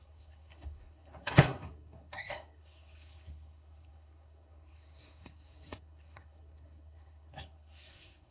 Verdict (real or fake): fake